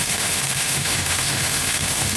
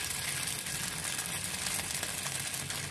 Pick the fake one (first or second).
first